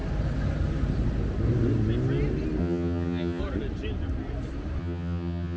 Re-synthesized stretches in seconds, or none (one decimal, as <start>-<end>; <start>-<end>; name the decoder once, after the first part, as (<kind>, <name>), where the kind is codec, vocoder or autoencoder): 2.6-3.4 (vocoder, HiFi-GAN); 4.8-5.6

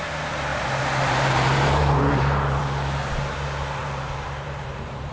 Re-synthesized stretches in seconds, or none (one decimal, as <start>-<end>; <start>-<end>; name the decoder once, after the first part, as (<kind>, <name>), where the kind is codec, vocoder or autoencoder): 0.5-2.6 (vocoder, BigVGAN v2); 3.8-5.1

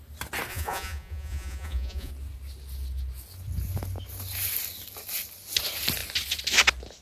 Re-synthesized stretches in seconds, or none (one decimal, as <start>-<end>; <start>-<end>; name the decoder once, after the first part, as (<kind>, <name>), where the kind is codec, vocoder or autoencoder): 0.5-2.1 (vocoder, Vocos)

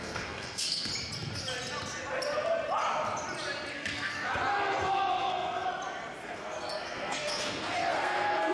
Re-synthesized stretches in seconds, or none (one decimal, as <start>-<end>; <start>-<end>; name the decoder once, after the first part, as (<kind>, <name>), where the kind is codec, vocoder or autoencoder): 0.0-0.9 (codec, SNAC); 3.7-5.7; 6.2-8.5

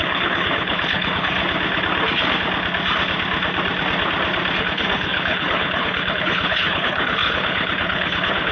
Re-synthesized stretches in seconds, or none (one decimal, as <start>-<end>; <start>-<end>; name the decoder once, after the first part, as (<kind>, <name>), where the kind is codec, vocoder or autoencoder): 0.0-1.4 (codec, HILCodec); 4.6-8.5

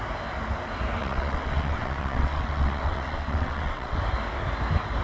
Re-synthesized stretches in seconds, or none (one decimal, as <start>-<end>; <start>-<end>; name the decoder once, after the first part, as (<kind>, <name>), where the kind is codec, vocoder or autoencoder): 1.0-4.0 (vocoder, WaveNeXt)